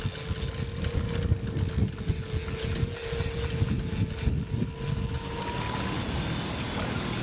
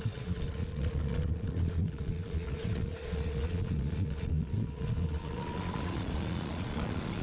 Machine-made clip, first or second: second